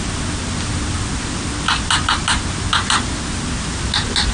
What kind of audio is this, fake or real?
real